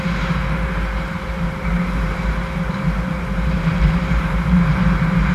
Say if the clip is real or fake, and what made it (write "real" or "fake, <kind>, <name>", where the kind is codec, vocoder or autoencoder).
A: fake, vocoder, BigVGAN v2